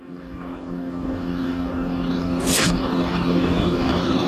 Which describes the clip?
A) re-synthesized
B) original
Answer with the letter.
A